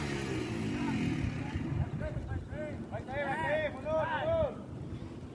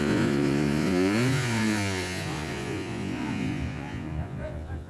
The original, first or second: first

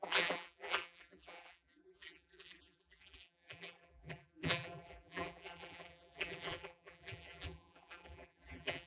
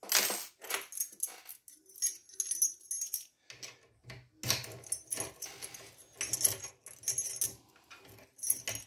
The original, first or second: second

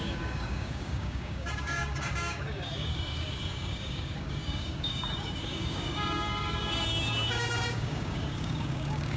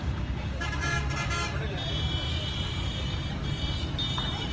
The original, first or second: second